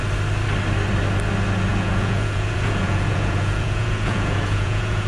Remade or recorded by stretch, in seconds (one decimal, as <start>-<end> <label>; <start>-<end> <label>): 0.0-1.7 recorded; 1.7-5.1 remade